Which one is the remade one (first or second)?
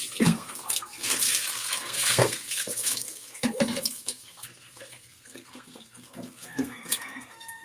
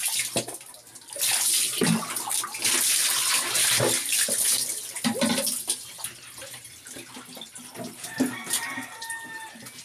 first